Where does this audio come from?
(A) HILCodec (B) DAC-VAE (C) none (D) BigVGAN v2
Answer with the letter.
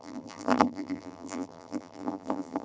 D